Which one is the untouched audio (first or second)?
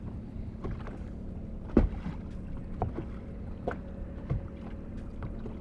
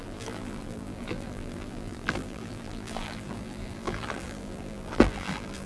first